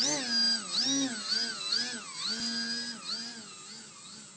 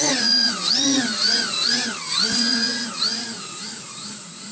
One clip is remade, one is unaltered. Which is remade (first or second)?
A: second